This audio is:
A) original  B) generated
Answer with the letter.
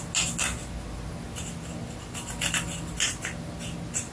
A